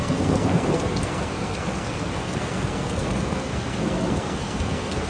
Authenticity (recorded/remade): remade